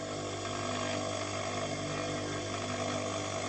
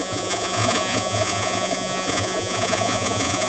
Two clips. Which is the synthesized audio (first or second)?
second